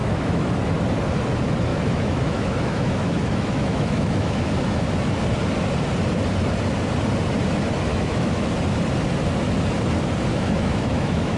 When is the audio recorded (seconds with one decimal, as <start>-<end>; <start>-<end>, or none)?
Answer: 0.5-1.7; 4.8-7.9; 8.5-10.3